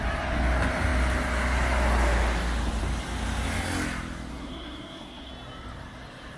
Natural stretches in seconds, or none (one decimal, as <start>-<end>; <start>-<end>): 0.0-4.3; 5.3-6.4